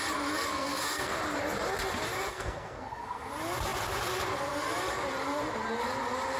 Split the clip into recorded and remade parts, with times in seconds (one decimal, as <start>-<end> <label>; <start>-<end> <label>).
0.0-0.5 recorded; 0.5-1.2 remade; 1.2-2.3 recorded; 2.3-3.3 remade; 3.3-6.4 recorded